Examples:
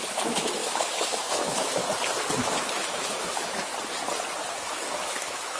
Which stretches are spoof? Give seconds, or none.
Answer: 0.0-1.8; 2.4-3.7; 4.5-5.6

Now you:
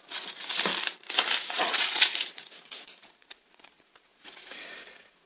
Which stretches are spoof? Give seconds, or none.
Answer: 0.0-0.7; 1.4-5.3

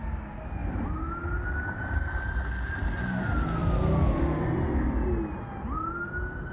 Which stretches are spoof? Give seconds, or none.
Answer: none

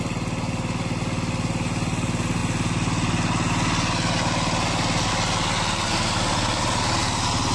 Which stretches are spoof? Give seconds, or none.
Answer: none

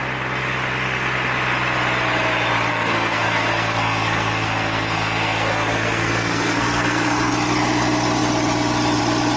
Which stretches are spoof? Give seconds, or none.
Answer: 2.7-7.3

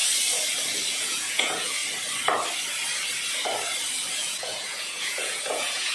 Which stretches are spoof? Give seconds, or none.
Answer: 0.9-1.8; 4.1-5.9

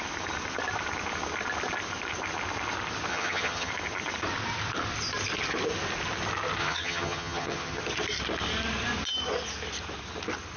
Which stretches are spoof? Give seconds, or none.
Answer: 3.1-3.7; 6.6-7.8

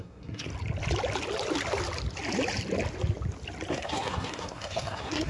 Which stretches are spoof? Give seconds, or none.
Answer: 0.0-0.5; 3.7-5.3